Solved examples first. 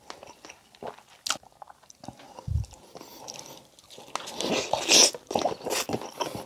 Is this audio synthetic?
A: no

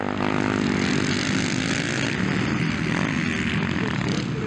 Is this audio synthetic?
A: no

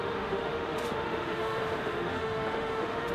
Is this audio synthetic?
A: yes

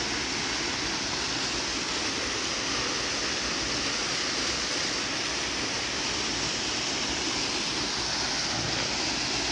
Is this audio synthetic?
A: no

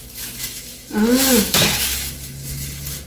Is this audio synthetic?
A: yes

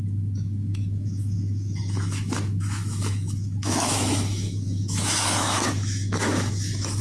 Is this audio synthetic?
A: yes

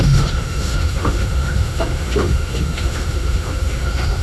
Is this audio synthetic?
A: yes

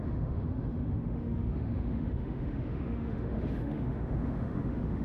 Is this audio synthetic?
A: yes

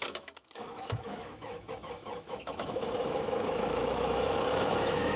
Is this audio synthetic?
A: yes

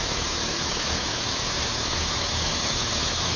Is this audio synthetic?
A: yes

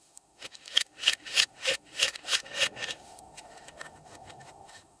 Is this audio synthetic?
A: yes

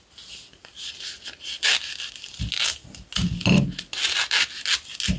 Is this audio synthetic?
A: no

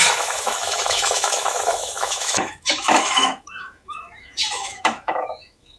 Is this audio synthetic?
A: yes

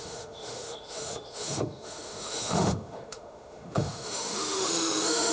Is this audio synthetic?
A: yes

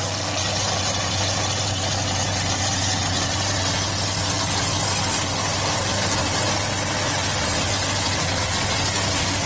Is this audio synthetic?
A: no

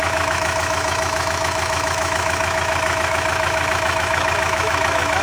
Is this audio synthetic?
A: yes